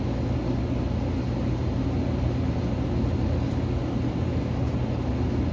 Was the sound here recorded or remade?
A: recorded